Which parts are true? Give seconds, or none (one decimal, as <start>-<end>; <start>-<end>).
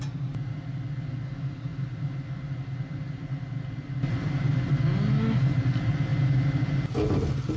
0.0-7.6